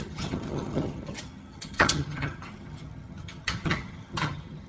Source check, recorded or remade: remade